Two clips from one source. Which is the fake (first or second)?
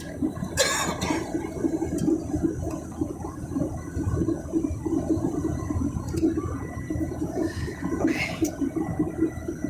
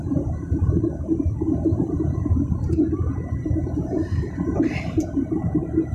second